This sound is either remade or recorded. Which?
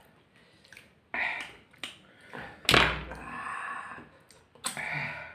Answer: recorded